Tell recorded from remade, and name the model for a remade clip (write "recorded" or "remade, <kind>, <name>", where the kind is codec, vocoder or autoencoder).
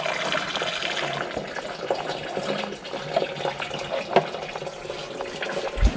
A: recorded